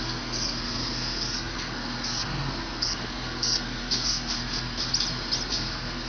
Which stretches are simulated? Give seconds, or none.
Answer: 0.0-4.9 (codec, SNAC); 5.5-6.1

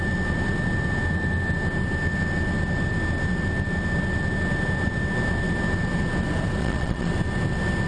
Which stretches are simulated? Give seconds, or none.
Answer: 6.6-7.1 (vocoder, Vocos)

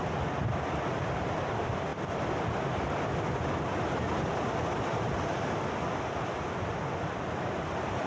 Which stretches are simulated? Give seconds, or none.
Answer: none

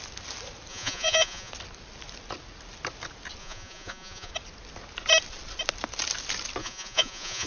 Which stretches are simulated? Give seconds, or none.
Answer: 0.7-1.5 (vocoder, Vocos); 3.4-4.3; 6.6-7.5

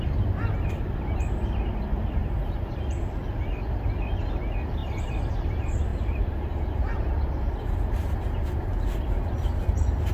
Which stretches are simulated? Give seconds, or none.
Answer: none